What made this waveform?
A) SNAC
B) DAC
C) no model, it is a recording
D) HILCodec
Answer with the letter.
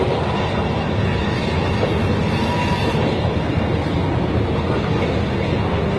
C